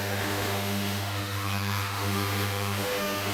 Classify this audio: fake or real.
fake